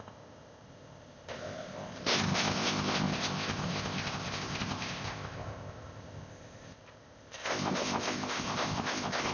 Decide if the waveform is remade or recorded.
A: remade